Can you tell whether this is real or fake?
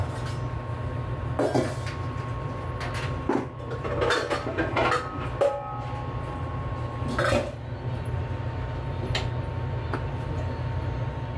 real